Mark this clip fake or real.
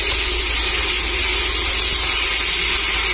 real